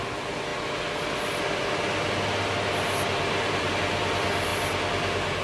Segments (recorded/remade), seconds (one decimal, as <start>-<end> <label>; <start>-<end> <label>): 0.0-5.4 recorded